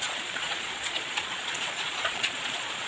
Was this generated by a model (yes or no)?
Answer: yes